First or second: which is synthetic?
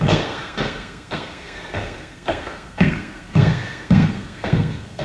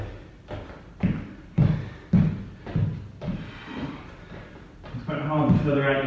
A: first